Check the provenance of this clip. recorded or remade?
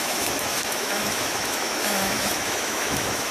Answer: remade